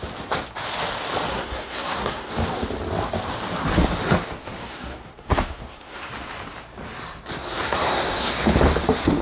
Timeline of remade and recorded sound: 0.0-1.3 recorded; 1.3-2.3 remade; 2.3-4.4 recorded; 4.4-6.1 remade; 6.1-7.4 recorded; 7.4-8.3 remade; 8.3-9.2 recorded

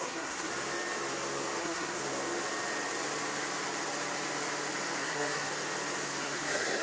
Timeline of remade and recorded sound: 0.0-0.5 remade; 0.5-1.6 recorded; 1.6-2.0 remade; 2.0-5.0 recorded; 5.0-5.5 remade; 5.5-6.2 recorded; 6.2-6.8 remade